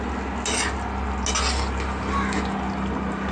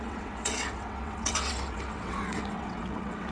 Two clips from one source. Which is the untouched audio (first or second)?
first